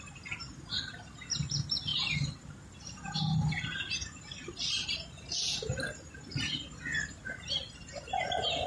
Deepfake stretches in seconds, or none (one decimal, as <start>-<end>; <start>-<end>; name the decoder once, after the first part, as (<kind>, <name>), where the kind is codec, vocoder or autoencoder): none